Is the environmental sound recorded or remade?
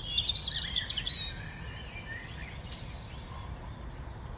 recorded